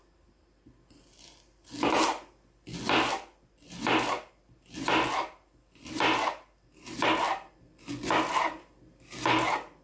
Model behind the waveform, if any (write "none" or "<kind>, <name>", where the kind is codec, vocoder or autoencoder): none